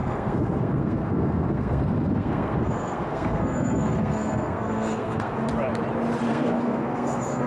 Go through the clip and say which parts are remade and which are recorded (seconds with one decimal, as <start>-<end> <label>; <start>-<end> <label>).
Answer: 0.0-5.5 remade; 5.5-6.3 recorded; 6.3-7.5 remade